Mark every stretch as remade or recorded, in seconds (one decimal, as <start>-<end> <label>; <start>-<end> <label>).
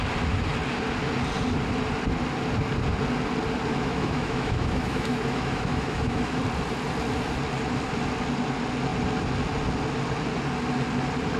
0.0-3.7 recorded; 3.7-6.4 remade; 6.4-11.4 recorded